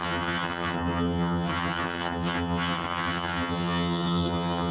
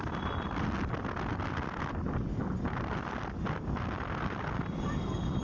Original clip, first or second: second